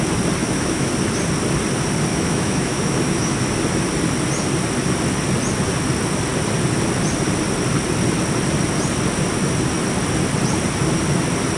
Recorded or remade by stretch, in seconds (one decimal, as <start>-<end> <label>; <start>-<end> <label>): 0.0-0.4 recorded; 0.4-0.9 remade; 0.9-2.1 recorded; 2.1-3.4 remade; 3.4-11.6 recorded